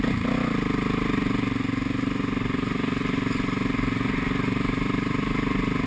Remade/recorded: recorded